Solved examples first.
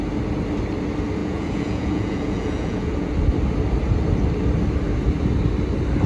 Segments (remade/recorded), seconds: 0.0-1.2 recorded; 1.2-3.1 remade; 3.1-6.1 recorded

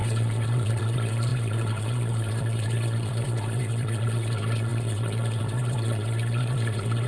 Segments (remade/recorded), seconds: 0.0-7.1 remade

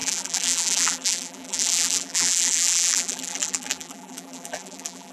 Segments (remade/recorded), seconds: 0.0-5.1 remade

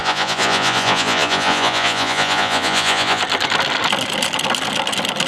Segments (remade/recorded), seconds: 0.0-3.2 remade; 3.2-5.3 recorded

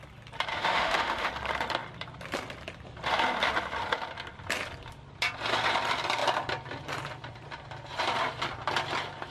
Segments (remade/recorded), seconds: 0.0-0.5 recorded; 0.5-1.3 remade; 1.3-9.3 recorded